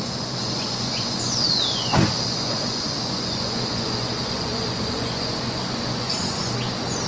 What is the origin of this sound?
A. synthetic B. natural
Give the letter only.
A